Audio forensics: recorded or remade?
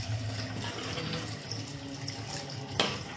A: recorded